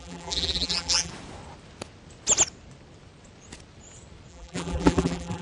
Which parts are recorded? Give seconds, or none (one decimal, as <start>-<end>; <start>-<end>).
1.1-4.3